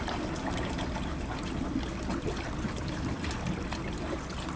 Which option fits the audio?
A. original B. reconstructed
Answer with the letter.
A